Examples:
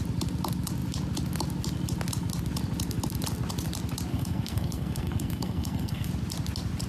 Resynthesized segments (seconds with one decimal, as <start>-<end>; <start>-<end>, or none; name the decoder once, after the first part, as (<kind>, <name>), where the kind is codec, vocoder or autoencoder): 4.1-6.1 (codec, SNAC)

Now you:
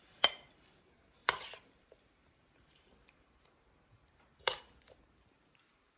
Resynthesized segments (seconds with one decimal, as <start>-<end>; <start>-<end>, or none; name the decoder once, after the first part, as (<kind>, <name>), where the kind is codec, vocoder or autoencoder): 0.0-6.0 (vocoder, BigVGAN v2)

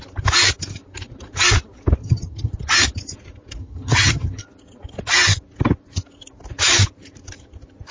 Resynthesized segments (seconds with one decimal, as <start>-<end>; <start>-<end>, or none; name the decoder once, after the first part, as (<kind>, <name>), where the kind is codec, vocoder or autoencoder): 2.0-2.5 (vocoder, HiFi-GAN); 3.6-4.4

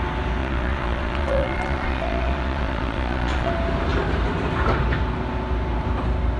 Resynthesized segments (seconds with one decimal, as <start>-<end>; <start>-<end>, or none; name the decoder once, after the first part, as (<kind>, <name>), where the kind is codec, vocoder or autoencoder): 0.4-3.5 (vocoder, Vocos)

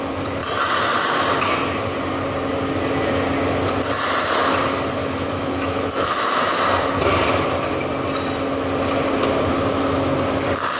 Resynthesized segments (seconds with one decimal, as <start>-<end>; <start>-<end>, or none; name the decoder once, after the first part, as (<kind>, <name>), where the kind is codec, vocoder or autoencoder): 5.0-6.6 (autoencoder, DAC-VAE)